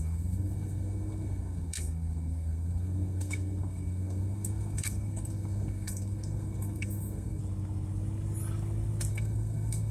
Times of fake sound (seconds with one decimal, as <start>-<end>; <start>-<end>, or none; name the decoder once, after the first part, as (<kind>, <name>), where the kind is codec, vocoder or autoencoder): 0.0-7.4 (codec, SNAC); 9.1-9.9

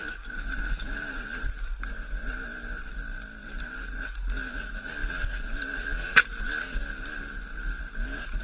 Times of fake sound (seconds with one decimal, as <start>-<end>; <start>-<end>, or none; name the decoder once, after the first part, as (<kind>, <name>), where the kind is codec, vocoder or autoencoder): none

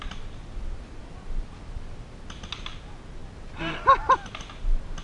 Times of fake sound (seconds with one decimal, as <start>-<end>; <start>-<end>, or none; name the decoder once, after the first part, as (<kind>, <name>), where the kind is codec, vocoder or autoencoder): none

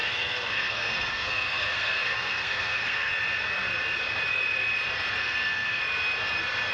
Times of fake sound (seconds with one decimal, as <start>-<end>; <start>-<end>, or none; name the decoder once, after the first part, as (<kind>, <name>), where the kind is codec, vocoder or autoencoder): 0.0-3.1 (codec, SNAC); 5.2-5.8